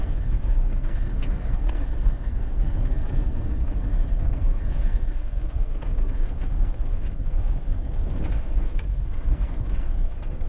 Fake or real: fake